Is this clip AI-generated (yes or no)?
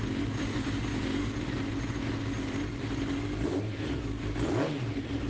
no